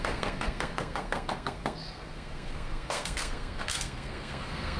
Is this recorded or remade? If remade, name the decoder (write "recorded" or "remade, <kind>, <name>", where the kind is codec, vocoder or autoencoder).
remade, codec, SNAC